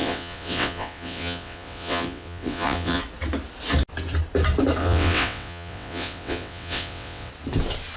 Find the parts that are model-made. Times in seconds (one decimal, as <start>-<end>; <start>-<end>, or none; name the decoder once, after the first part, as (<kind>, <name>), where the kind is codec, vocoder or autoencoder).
0.0-3.0 (vocoder, WaveNeXt); 4.8-7.3